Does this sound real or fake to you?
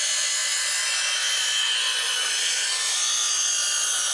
real